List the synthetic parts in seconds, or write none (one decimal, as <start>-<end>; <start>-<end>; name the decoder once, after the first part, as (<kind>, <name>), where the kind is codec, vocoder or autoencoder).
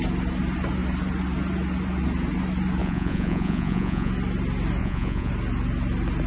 2.8-4.1 (vocoder, Vocos); 4.8-5.3